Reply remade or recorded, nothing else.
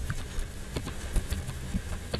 recorded